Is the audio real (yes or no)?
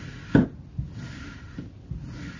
yes